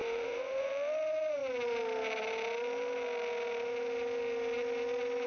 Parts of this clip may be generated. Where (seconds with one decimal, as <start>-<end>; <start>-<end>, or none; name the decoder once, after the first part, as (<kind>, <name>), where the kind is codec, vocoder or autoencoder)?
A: 0.0-0.7 (vocoder, Vocos)